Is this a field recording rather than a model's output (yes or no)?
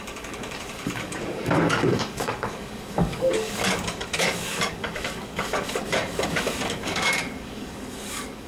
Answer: no